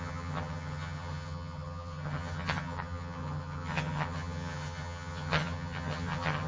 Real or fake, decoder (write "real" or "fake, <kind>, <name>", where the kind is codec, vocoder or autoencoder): fake, vocoder, HiFi-GAN